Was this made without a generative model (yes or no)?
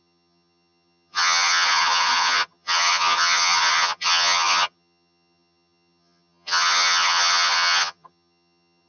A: no